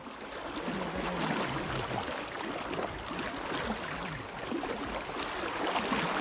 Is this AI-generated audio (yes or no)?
no